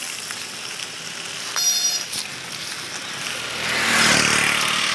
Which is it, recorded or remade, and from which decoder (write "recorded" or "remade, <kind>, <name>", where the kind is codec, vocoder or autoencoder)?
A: recorded